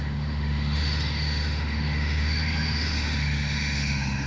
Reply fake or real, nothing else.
fake